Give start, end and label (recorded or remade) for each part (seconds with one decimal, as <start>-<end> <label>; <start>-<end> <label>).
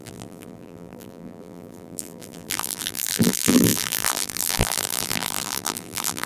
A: 0.0-6.3 remade